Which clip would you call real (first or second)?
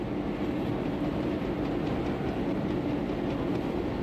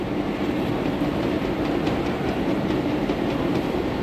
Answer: first